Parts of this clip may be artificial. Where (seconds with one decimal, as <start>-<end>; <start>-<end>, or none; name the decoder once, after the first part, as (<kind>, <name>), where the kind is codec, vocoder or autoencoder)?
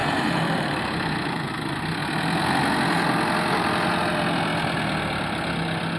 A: 0.0-1.5 (vocoder, BigVGAN v2)